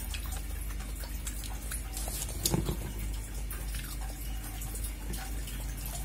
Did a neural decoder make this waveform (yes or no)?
no